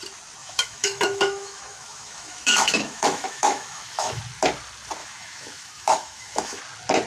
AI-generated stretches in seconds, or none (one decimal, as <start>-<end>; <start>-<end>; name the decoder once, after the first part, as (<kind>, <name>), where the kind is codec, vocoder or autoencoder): 0.4-4.2 (autoencoder, DAC-VAE); 5.0-6.6